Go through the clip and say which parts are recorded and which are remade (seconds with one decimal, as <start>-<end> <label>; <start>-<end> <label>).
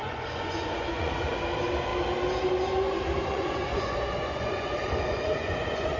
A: 0.0-1.1 remade; 1.1-3.3 recorded; 3.3-6.0 remade